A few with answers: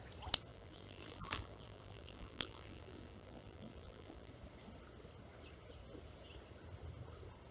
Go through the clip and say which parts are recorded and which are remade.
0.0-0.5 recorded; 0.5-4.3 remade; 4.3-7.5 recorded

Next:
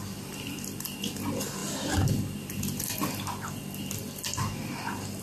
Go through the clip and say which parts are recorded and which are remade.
0.0-5.2 recorded

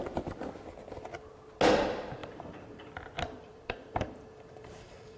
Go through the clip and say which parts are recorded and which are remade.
0.0-2.2 recorded; 2.2-2.9 remade; 2.9-3.4 recorded; 3.4-5.2 remade